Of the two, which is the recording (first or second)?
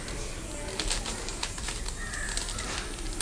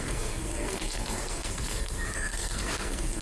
first